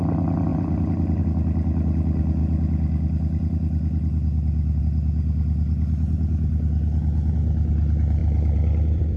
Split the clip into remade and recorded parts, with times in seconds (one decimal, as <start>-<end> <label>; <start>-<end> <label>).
0.0-0.5 recorded; 0.5-1.2 remade; 1.2-8.2 recorded; 8.2-9.2 remade